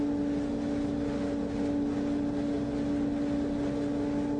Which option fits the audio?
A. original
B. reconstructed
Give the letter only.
A